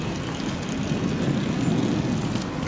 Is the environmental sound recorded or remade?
recorded